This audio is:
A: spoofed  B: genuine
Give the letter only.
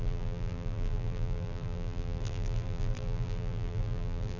A